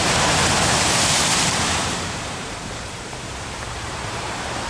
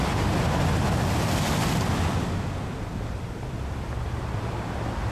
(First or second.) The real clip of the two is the second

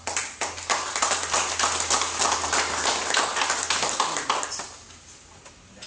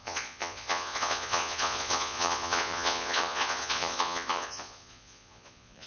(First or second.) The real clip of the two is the first